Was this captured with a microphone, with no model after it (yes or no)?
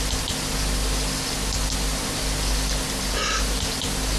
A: yes